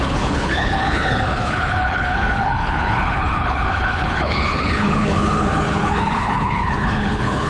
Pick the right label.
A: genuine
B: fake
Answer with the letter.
B